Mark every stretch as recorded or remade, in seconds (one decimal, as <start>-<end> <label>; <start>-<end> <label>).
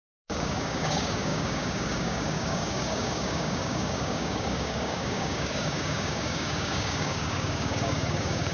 0.0-8.5 remade